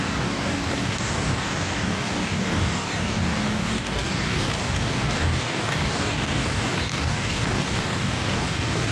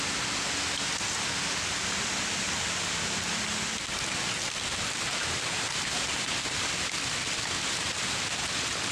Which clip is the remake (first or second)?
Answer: first